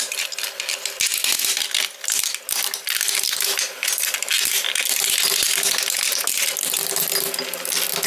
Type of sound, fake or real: real